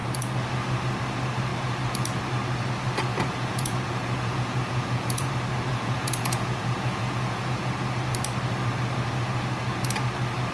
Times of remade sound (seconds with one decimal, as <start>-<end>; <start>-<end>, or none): 3.1-5.3; 5.7-7.6